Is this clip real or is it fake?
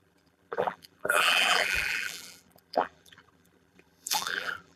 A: fake